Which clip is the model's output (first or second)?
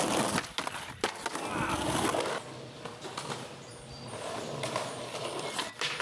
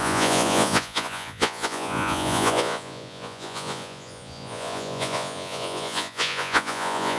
second